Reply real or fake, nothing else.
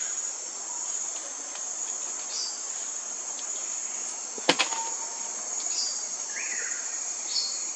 real